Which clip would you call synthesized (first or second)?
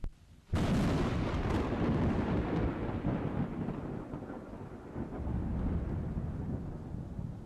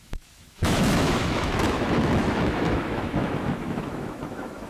second